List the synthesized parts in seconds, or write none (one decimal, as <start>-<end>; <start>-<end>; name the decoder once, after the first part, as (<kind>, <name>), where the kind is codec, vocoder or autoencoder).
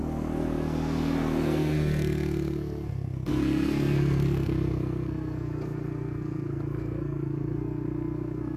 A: 0.0-8.6 (codec, SNAC)